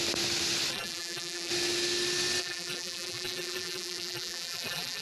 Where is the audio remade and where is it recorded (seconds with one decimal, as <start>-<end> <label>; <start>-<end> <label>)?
0.0-0.7 recorded; 0.7-1.5 remade; 1.5-2.4 recorded; 2.4-5.0 remade